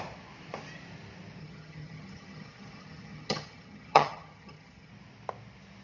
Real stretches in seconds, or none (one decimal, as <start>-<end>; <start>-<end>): 0.0-1.4; 4.9-5.8